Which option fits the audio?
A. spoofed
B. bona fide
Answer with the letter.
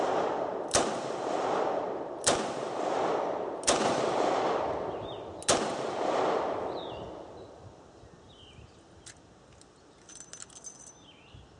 B